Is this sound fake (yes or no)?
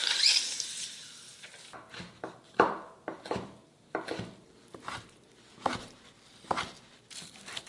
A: no